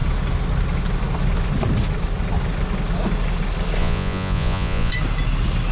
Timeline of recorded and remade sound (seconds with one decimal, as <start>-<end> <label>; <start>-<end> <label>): 0.0-3.8 recorded; 3.8-4.9 remade; 4.9-5.7 recorded